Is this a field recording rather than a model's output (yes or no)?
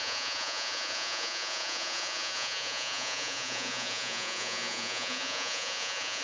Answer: no